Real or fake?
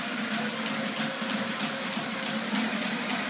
real